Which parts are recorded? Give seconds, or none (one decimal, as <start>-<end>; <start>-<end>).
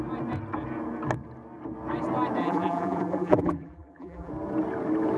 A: 0.0-2.4; 4.3-5.2